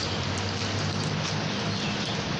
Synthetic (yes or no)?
no